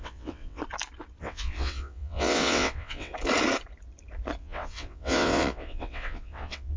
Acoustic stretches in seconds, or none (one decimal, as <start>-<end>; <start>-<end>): 0.6-1.2; 3.1-4.4